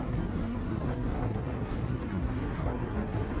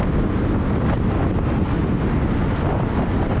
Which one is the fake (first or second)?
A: first